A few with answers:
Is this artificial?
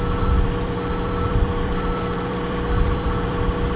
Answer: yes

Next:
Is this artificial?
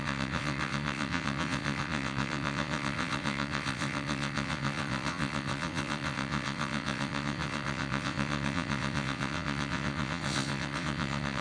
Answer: yes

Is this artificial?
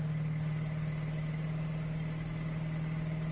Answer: no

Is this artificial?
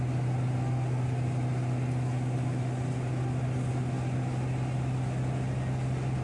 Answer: no